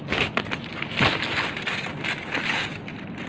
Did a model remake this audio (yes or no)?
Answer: no